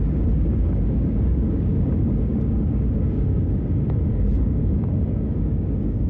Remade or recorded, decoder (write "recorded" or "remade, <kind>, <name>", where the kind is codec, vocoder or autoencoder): remade, codec, DAC